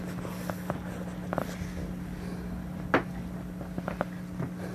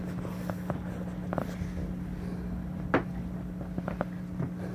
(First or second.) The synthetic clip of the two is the second